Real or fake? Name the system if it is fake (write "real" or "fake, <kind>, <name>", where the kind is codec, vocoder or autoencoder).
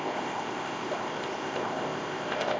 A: fake, codec, ZipCodec